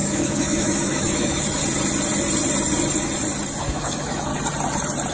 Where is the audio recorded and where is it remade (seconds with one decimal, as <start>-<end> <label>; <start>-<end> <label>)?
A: 0.0-1.6 remade; 1.6-3.6 recorded; 3.6-4.3 remade; 4.3-5.1 recorded